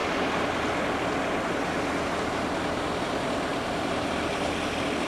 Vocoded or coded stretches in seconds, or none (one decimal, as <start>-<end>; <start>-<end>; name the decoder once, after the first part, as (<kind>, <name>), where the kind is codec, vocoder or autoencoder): 3.5-4.2 (vocoder, BigVGAN v2)